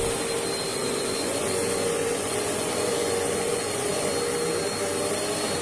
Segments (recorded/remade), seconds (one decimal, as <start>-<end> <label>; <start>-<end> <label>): 0.0-0.7 recorded; 0.7-4.1 remade; 4.1-5.6 recorded